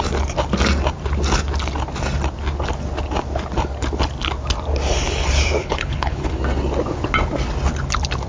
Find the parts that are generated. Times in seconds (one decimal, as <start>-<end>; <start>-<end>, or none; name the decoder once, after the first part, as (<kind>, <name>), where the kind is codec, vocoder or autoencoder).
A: 5.6-6.3 (codec, HILCodec)